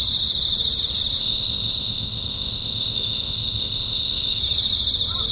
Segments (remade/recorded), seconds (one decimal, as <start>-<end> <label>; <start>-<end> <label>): 0.0-1.2 recorded; 1.2-4.4 remade; 4.4-5.3 recorded